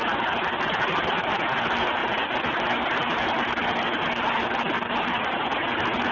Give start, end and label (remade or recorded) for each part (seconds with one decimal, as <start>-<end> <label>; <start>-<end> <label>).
0.0-6.1 recorded

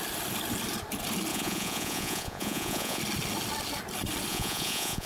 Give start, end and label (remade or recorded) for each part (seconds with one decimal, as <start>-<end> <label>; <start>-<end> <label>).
0.0-1.3 recorded; 1.3-3.0 remade; 3.0-4.3 recorded; 4.3-5.1 remade

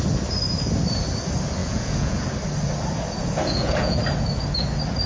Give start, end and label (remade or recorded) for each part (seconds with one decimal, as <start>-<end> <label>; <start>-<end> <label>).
0.0-1.6 recorded; 1.6-2.3 remade; 2.3-3.2 recorded; 3.2-4.0 remade; 4.0-5.1 recorded